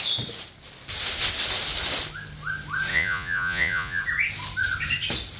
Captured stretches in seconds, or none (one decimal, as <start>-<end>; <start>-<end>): 0.0-2.9; 4.0-5.4